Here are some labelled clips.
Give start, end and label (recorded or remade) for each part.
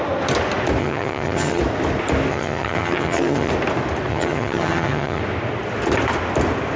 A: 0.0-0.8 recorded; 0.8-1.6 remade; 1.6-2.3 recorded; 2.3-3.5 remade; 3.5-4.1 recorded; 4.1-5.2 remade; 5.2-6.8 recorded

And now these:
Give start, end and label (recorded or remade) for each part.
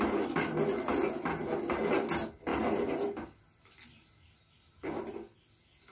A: 0.0-5.9 recorded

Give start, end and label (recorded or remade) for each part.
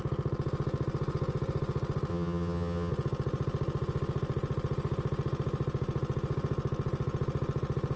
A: 0.0-2.1 recorded; 2.1-2.9 remade; 2.9-8.0 recorded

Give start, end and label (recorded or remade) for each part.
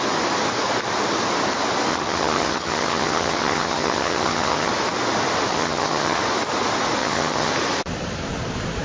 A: 0.0-1.9 recorded; 1.9-4.7 remade; 4.7-5.5 recorded; 5.5-6.2 remade; 6.2-7.0 recorded; 7.0-7.5 remade; 7.5-8.8 recorded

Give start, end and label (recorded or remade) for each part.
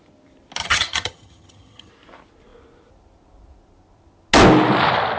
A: 0.0-0.6 recorded; 0.6-1.9 remade; 1.9-5.2 recorded